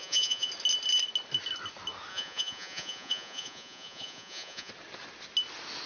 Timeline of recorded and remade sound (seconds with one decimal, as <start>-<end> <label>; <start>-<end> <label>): 0.0-0.5 remade; 0.5-2.1 recorded; 2.1-4.7 remade; 4.7-5.9 recorded